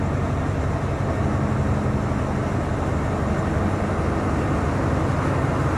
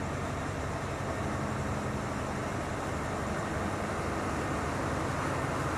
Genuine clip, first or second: first